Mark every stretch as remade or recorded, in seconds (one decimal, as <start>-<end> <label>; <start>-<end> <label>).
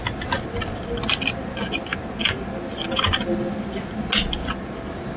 0.0-5.2 recorded